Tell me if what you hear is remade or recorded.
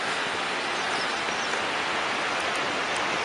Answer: recorded